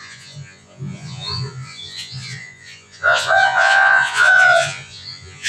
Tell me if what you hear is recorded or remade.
remade